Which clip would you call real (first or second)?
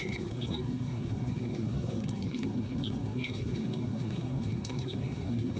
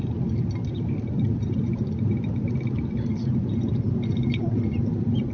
second